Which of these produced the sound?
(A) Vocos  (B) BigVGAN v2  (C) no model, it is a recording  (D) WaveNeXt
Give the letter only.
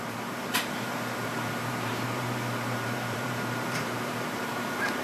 B